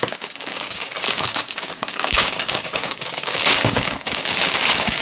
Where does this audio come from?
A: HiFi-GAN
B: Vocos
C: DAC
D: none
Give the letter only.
C